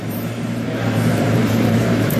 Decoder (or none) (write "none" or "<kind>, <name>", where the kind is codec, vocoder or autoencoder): vocoder, BigVGAN v2